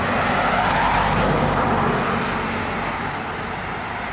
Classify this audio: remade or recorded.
recorded